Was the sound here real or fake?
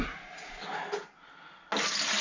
real